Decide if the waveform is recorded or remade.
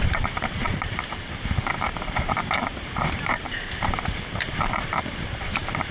remade